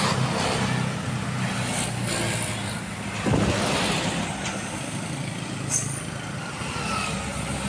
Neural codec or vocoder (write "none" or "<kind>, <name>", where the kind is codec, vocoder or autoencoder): none